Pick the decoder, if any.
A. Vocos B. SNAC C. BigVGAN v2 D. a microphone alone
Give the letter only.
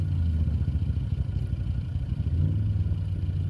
D